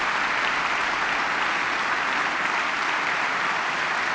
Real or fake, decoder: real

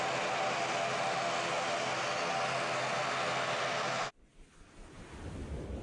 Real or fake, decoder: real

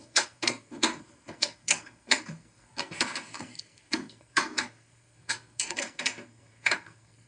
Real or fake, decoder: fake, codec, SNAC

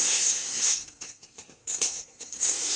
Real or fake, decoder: fake, codec, SNAC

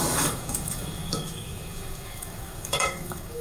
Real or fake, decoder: fake, codec, DAC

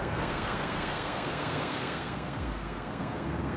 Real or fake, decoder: fake, codec, SNAC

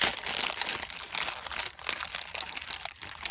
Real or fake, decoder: real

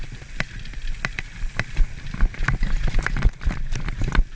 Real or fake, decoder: real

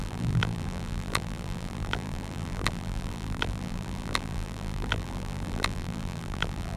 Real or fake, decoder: fake, vocoder, BigVGAN v2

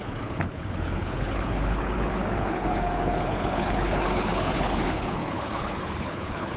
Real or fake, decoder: fake, codec, HILCodec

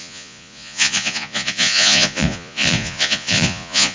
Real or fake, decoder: fake, vocoder, Vocos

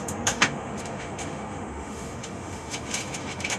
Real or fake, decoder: fake, autoencoder, DAC-VAE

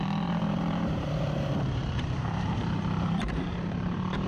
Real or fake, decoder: fake, vocoder, BigVGAN v2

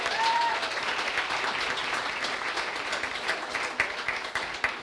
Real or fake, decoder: real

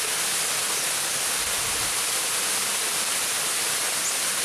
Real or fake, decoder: real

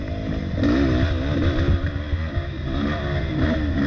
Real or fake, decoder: real